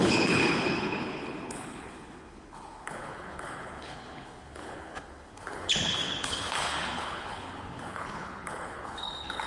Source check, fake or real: fake